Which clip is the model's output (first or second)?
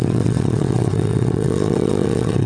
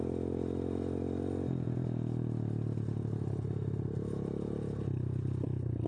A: first